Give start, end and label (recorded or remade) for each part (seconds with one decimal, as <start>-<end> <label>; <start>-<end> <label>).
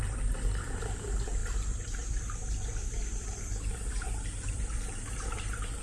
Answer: 0.0-5.8 remade